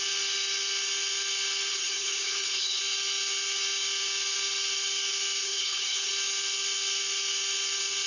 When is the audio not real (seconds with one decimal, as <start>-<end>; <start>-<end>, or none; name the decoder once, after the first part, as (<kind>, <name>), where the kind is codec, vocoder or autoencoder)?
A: 1.7-2.8 (codec, HILCodec); 5.4-6.1